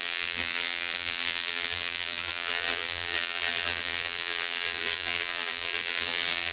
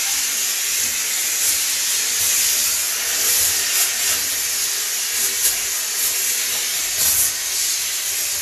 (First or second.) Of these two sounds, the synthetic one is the first